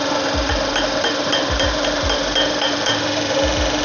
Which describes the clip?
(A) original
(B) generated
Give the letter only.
B